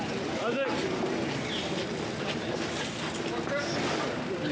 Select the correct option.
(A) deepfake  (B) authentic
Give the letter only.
B